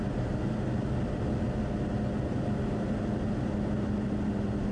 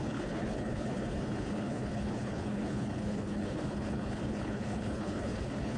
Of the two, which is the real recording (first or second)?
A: first